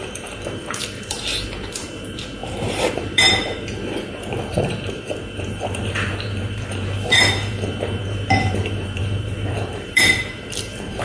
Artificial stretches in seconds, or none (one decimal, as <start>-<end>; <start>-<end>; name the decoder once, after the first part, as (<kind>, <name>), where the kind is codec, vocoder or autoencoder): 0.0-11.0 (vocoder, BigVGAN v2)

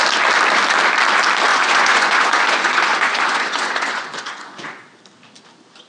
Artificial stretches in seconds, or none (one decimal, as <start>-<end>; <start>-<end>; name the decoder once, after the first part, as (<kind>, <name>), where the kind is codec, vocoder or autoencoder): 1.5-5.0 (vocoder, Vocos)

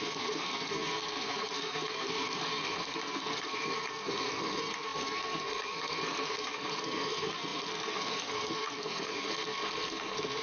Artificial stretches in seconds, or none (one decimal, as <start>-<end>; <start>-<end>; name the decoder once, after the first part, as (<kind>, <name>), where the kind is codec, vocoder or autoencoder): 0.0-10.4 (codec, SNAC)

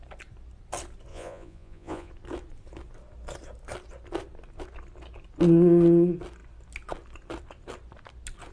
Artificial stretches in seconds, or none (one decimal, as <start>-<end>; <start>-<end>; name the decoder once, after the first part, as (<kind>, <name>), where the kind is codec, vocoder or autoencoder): 1.1-2.1 (vocoder, Vocos)

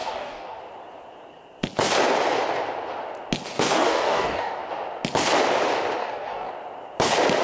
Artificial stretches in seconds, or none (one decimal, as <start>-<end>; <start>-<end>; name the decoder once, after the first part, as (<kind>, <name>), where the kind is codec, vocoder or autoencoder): 0.0-0.6 (codec, DAC); 3.5-4.6; 6.0-6.5